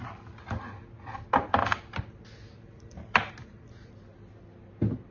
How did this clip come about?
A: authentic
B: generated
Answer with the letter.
A